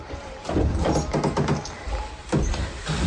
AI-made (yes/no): no